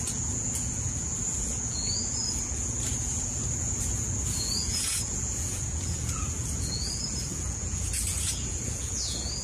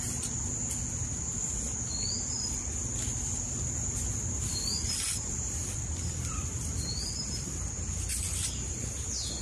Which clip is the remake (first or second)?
first